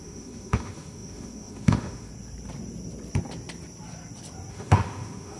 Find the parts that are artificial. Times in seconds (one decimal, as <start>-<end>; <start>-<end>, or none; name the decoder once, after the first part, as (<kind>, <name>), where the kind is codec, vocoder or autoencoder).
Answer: 0.0-2.1 (autoencoder, DAC-VAE); 4.5-5.4